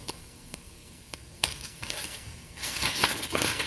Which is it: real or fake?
fake